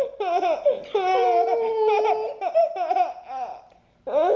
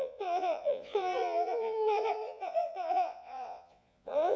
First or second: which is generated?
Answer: second